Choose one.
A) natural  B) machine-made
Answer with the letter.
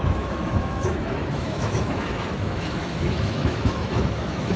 B